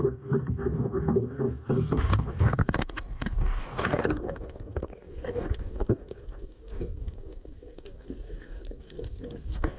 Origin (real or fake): fake